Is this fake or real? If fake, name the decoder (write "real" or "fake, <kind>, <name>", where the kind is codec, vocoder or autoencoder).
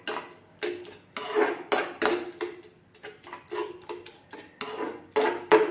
real